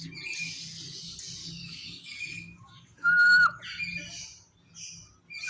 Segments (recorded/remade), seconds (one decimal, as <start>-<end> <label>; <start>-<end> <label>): 0.0-1.4 recorded; 1.4-3.6 remade; 3.6-5.5 recorded